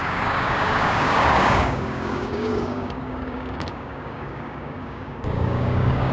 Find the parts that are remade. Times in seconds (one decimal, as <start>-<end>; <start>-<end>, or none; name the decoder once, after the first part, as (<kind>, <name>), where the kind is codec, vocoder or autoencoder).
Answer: 0.0-6.1 (codec, DAC)